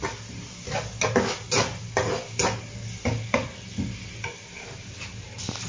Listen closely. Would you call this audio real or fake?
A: real